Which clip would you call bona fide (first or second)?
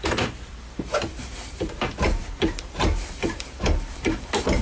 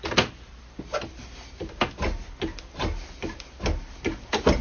second